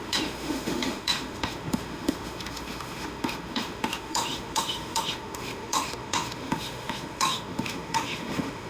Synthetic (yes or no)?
yes